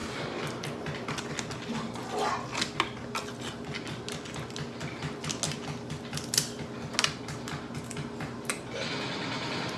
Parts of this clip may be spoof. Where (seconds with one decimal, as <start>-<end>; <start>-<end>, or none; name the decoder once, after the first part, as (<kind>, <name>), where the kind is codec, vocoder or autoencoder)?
none